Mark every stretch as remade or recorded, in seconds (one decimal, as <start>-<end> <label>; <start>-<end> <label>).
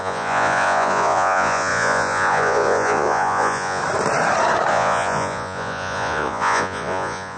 0.0-3.8 remade; 3.8-4.7 recorded; 4.7-7.4 remade